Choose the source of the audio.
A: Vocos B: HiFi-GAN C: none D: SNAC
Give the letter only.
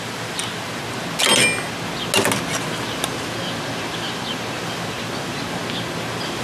C